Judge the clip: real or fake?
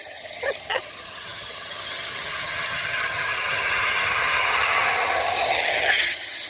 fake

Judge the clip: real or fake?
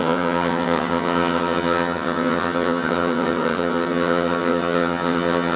fake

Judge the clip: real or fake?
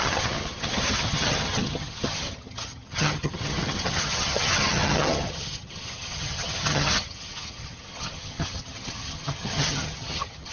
fake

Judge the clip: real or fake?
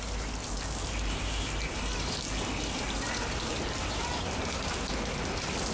real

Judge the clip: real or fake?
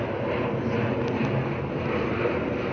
real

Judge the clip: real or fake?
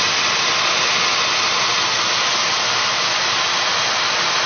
real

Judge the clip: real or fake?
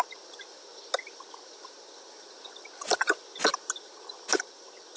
real